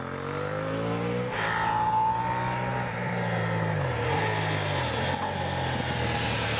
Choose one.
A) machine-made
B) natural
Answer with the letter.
B